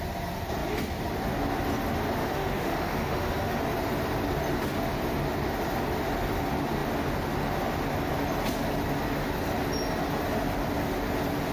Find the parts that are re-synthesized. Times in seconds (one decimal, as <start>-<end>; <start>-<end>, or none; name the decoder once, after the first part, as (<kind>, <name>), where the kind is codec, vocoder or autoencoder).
2.2-3.6 (autoencoder, DAC-VAE)